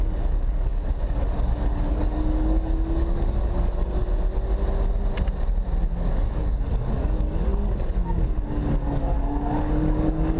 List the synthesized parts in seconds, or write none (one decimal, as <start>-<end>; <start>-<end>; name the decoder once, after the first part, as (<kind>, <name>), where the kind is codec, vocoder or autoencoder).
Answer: 0.0-4.0 (codec, DAC); 5.8-10.4